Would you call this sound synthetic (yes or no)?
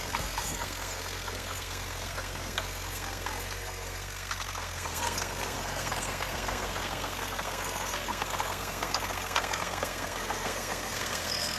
yes